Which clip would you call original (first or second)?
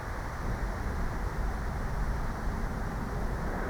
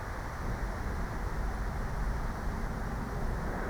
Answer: second